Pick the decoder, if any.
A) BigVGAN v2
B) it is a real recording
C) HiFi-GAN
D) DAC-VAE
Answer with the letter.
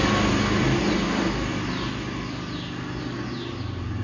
B